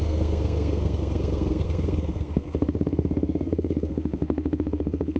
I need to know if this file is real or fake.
fake